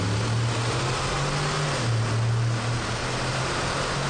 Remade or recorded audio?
recorded